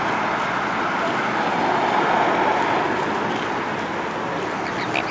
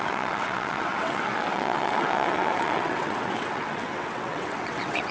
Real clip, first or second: first